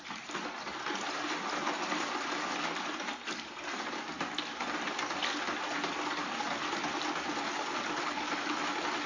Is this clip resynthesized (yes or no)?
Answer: no